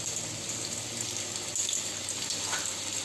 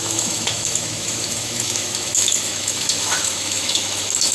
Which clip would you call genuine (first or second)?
first